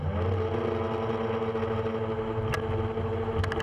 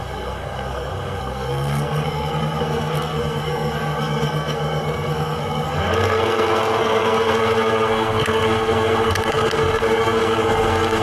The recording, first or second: first